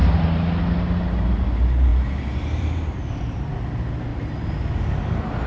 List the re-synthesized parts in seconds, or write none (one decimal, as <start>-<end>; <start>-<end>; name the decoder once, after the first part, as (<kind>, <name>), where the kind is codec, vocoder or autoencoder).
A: 1.9-3.5 (vocoder, BigVGAN v2); 4.1-5.1